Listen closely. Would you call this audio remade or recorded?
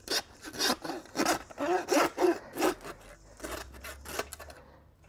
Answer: recorded